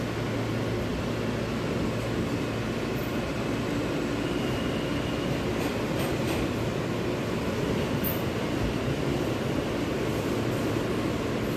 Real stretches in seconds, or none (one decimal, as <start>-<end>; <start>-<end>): 0.0-11.6